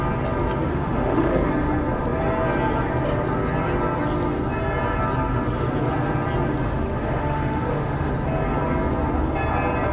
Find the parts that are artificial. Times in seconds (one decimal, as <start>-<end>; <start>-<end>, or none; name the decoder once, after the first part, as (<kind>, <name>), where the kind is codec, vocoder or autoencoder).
0.7-1.5 (autoencoder, DAC-VAE); 6.6-8.1